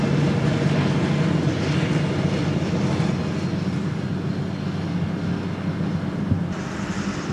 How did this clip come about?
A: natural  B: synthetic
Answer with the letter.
A